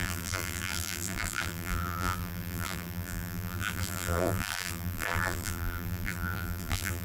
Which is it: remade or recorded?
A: remade